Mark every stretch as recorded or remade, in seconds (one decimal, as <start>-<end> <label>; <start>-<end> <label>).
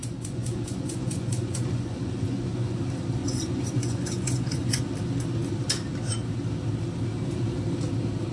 0.0-2.8 remade; 2.8-3.2 recorded; 3.2-4.8 remade; 4.8-8.3 recorded